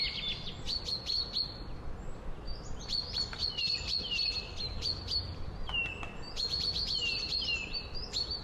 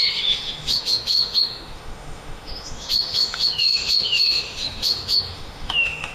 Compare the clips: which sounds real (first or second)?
first